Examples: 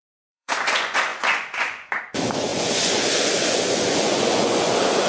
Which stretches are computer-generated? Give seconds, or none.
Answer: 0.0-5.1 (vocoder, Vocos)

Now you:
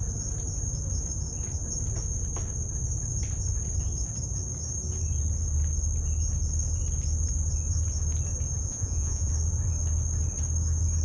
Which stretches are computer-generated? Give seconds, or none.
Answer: 8.7-9.3 (vocoder, Vocos)